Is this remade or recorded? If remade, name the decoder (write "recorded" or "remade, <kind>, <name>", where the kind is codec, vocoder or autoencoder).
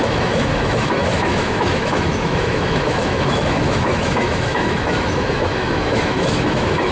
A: remade, autoencoder, DAC-VAE